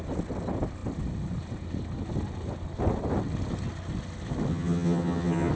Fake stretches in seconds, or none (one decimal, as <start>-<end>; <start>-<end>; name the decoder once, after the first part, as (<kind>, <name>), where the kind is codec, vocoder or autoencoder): 4.5-5.5 (vocoder, HiFi-GAN)